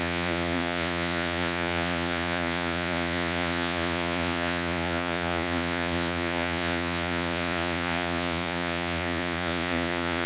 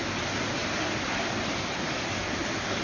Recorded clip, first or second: second